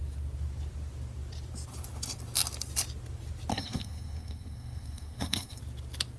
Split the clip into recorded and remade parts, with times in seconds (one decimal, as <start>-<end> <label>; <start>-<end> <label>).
0.0-3.5 recorded; 3.5-5.6 remade; 5.6-6.2 recorded